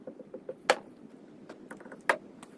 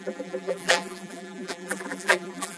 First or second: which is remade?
second